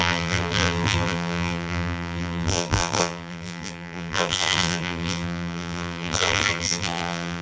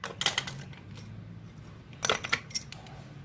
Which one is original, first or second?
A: second